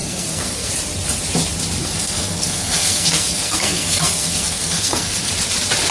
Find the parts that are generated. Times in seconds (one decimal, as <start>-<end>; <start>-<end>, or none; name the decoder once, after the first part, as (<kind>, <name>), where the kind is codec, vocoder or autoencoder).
0.0-0.7 (codec, SNAC); 1.8-5.3